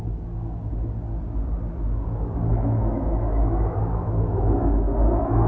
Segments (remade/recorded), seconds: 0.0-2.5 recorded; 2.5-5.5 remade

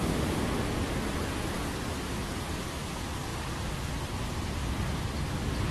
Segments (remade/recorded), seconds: 0.0-5.7 recorded

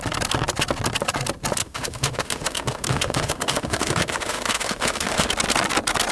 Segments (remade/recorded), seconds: 0.0-1.6 recorded; 1.6-5.3 remade; 5.3-6.1 recorded

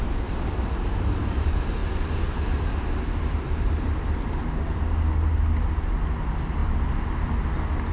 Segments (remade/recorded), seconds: 0.0-7.9 recorded

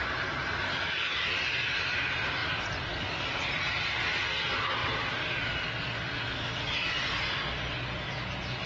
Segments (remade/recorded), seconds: 0.0-8.7 recorded

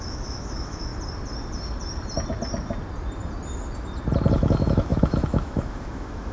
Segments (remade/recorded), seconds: 0.0-0.9 remade; 0.9-4.3 recorded; 4.3-6.3 remade

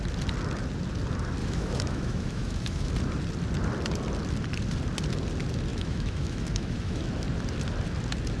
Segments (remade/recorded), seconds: 0.0-1.4 recorded; 1.4-2.9 remade; 2.9-5.7 recorded; 5.7-7.0 remade; 7.0-8.4 recorded

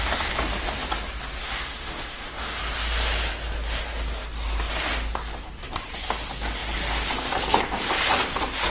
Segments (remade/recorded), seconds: 0.0-1.4 recorded; 1.4-2.6 remade; 2.6-8.7 recorded